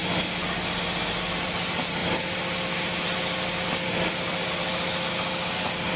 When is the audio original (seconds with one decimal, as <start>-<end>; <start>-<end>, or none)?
0.0-6.0